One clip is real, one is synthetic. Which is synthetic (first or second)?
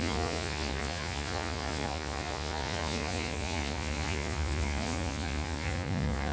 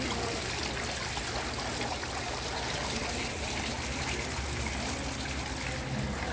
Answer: first